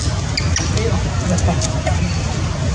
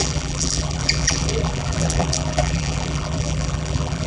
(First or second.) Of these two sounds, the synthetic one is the second